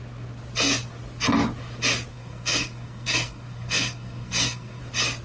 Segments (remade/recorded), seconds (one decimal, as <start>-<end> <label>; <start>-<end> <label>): 0.0-2.1 recorded; 2.1-4.8 remade; 4.8-5.2 recorded